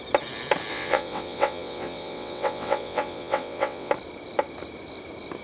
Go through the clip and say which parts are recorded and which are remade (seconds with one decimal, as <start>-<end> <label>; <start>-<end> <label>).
0.0-0.7 recorded; 0.7-3.9 remade; 3.9-5.4 recorded